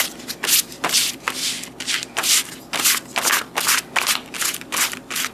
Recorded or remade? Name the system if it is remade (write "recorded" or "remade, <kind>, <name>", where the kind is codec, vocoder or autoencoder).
recorded